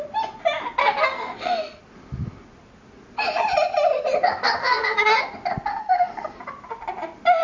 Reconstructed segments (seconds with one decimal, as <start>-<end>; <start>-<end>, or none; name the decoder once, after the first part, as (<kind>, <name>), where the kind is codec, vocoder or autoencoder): 0.8-1.8 (codec, SNAC); 4.6-5.2; 5.7-6.4

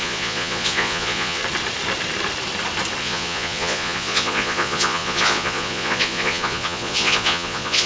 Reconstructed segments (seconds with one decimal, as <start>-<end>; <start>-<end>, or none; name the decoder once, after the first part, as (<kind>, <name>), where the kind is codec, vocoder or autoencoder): 0.0-1.4 (vocoder, Vocos); 3.0-7.9

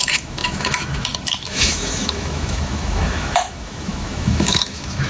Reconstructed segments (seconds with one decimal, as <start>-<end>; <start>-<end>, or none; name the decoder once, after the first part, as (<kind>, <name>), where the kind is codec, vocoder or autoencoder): 0.0-5.1 (autoencoder, DAC-VAE)

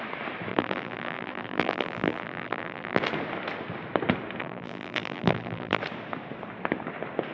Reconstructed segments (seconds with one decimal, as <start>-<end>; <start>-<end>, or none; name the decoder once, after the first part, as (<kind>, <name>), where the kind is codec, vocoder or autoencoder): 0.5-3.0 (vocoder, BigVGAN v2); 4.4-5.8